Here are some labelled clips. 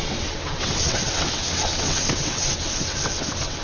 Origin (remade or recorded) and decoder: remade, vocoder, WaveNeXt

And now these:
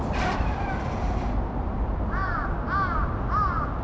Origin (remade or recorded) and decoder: recorded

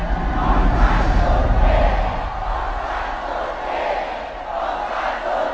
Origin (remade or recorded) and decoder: recorded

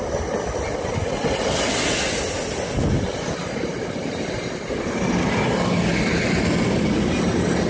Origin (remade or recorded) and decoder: recorded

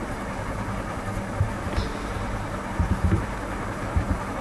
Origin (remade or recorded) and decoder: recorded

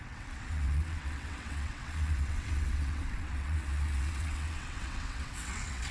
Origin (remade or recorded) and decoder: remade, vocoder, WaveNeXt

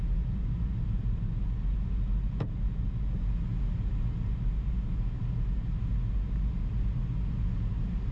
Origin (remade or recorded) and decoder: recorded